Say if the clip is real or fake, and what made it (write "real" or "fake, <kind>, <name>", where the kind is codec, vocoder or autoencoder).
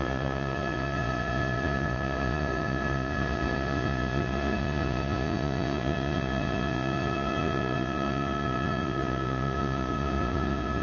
fake, vocoder, Vocos